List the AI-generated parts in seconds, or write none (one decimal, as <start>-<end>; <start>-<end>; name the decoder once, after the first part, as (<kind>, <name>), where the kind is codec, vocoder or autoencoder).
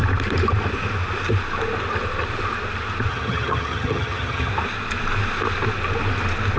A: 3.1-4.5 (vocoder, HiFi-GAN)